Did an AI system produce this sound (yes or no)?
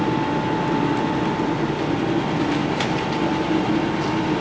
no